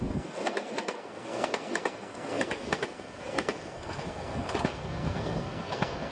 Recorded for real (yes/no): no